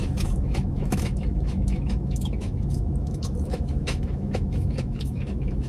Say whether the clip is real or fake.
fake